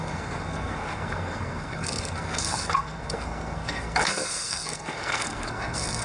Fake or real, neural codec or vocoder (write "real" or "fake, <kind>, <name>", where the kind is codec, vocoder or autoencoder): fake, codec, SNAC